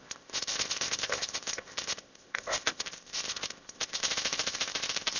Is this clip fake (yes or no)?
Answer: yes